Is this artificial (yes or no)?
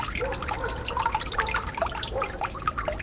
no